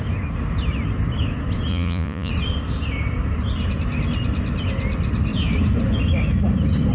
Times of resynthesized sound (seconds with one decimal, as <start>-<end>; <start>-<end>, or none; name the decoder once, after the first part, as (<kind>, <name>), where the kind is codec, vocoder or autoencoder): 1.7-2.3 (vocoder, Vocos)